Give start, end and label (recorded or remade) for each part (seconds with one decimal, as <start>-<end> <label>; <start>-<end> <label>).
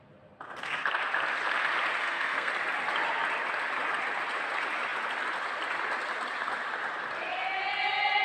0.0-2.0 recorded; 2.0-2.5 remade; 2.5-8.2 recorded